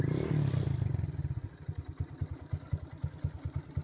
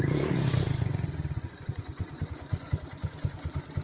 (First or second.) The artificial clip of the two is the second